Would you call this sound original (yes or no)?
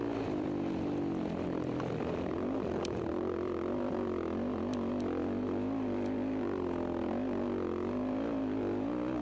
yes